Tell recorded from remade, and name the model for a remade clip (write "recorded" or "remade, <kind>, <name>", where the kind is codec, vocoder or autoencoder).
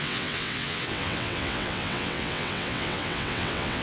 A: remade, vocoder, WaveNeXt